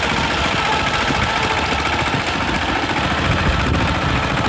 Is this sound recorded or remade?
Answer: recorded